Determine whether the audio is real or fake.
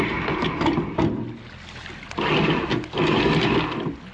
real